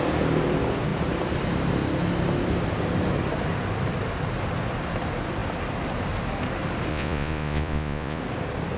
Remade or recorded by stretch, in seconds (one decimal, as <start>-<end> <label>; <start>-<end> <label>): 0.0-6.9 recorded; 6.9-8.2 remade; 8.2-8.8 recorded